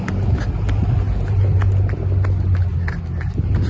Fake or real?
real